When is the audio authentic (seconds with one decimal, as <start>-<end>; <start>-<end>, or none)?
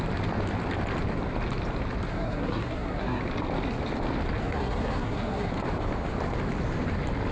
0.0-2.1; 3.2-4.4; 5.5-7.3